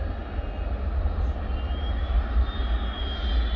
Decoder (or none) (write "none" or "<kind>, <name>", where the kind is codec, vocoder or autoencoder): none